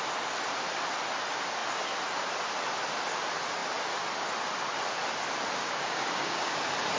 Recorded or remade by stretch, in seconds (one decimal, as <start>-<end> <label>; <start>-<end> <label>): 0.0-5.6 recorded; 5.6-6.6 remade; 6.6-7.0 recorded